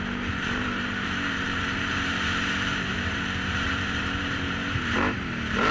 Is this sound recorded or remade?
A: remade